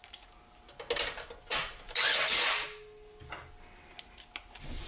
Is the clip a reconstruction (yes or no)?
no